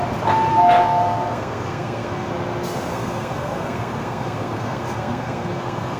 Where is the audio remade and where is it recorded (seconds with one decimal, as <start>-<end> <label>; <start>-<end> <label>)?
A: 0.0-0.5 recorded; 0.5-2.3 remade; 2.3-2.9 recorded; 2.9-6.0 remade